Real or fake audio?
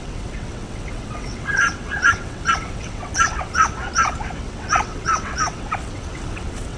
fake